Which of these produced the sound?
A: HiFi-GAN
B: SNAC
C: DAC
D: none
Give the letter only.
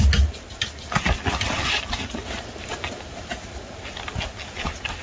D